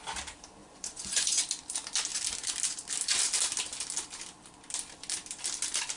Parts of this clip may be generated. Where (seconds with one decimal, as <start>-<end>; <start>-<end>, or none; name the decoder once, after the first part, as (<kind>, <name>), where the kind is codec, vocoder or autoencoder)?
0.6-1.4 (vocoder, Vocos)